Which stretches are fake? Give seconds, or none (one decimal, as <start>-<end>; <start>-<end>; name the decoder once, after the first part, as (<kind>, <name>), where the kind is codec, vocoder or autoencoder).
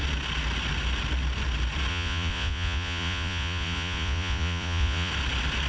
1.9-5.1 (vocoder, Vocos)